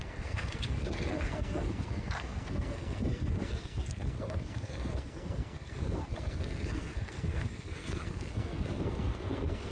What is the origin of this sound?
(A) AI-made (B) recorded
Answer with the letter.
A